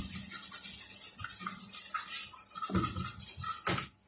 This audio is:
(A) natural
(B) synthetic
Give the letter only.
A